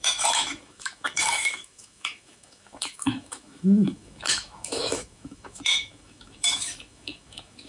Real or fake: fake